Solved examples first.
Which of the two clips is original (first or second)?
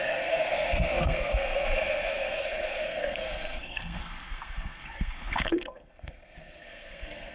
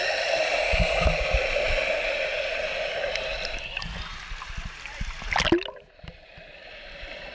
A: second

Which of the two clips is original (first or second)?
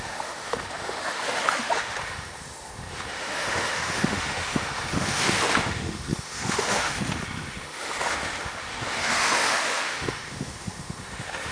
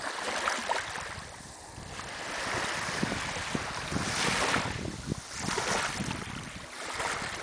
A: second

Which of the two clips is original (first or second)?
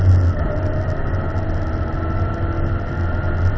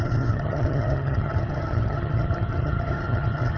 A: first